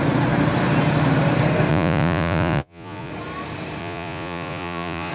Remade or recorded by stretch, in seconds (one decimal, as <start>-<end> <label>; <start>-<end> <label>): 0.0-1.7 recorded; 1.7-3.1 remade; 3.1-3.8 recorded; 3.8-5.1 remade